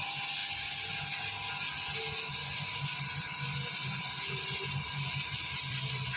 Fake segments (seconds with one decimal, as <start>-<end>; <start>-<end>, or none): none

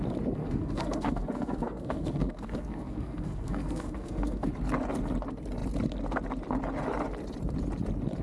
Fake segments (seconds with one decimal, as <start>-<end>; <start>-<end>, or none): 0.4-4.5

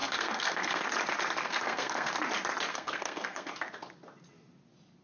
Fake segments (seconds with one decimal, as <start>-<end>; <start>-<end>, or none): 0.0-0.8; 1.4-2.1; 2.7-3.5

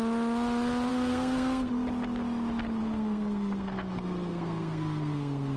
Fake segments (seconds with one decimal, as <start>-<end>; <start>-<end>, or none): 0.9-1.7; 2.8-5.6